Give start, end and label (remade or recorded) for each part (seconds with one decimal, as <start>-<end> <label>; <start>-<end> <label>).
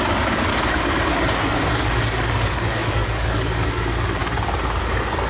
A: 0.0-0.5 remade; 0.5-1.7 recorded; 1.7-4.2 remade; 4.2-4.8 recorded; 4.8-5.3 remade